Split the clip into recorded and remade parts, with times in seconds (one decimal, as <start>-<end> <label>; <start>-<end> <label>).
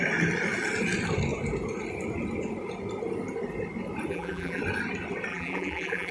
0.0-4.1 recorded; 4.1-4.6 remade; 4.6-5.3 recorded; 5.3-6.1 remade